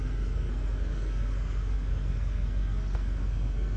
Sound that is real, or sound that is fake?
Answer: fake